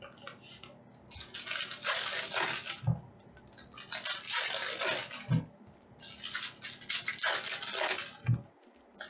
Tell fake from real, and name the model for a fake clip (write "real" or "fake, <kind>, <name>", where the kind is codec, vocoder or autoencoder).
real